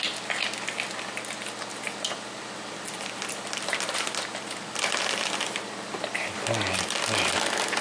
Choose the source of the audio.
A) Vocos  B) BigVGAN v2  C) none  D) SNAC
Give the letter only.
C